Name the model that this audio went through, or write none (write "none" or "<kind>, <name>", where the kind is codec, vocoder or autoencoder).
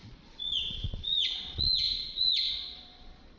vocoder, Vocos